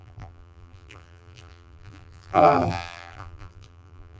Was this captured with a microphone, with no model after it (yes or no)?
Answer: no